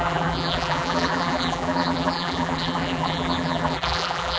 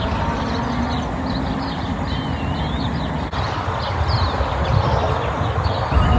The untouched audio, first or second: second